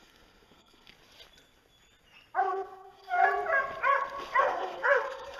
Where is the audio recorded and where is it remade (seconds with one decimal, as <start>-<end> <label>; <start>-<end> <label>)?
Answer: 0.0-0.9 remade; 0.9-2.5 recorded; 2.5-3.2 remade; 3.2-4.4 recorded; 4.4-5.4 remade